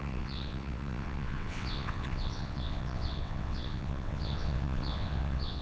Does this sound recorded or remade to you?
remade